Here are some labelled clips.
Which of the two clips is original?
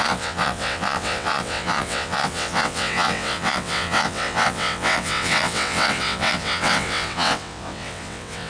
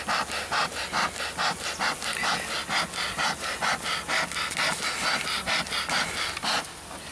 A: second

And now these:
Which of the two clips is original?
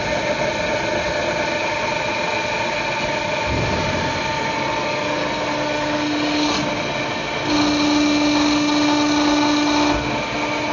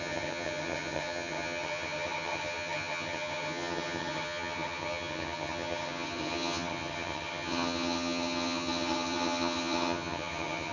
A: first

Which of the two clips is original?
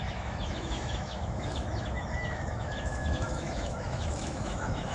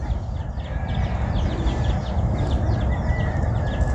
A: second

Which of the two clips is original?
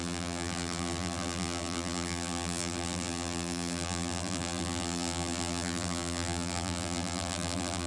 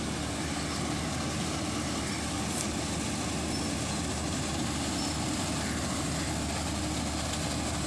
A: second